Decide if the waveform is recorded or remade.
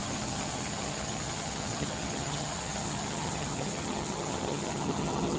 remade